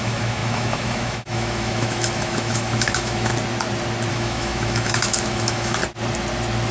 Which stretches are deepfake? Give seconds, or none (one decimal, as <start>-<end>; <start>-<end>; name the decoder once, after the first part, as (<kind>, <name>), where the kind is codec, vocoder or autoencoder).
0.0-3.3 (autoencoder, DAC-VAE); 4.1-5.8